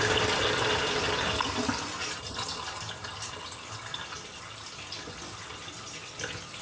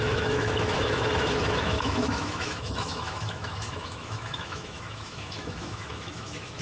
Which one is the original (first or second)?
first